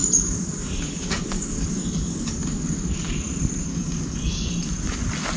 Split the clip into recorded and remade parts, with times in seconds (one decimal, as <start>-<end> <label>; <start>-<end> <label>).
0.0-3.2 remade; 3.2-3.7 recorded; 3.7-4.5 remade; 4.5-5.4 recorded